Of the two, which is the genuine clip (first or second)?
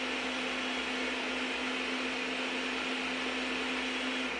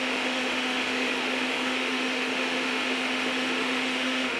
first